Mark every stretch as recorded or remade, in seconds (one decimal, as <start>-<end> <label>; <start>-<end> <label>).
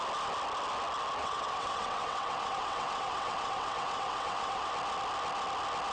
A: 0.0-1.2 recorded; 1.2-4.7 remade; 4.7-5.9 recorded